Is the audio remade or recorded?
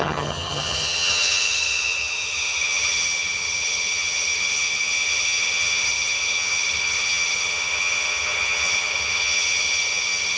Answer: remade